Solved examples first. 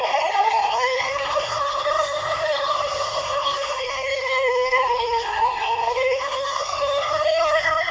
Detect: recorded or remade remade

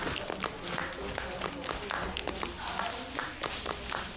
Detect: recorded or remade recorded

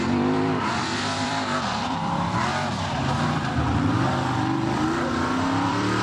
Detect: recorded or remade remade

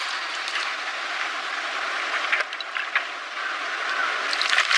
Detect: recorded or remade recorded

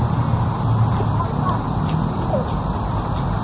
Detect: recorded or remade recorded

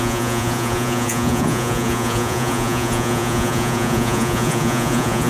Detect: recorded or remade remade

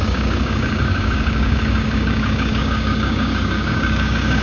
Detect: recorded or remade remade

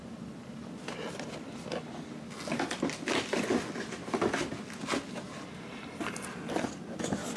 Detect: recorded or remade recorded